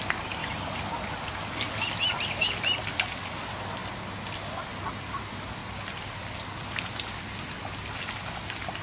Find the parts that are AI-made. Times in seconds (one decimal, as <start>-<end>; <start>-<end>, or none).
none